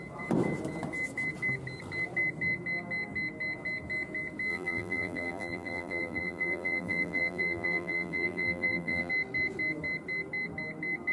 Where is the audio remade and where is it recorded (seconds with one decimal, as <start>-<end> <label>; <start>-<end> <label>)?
0.0-4.5 recorded; 4.5-9.1 remade; 9.1-11.1 recorded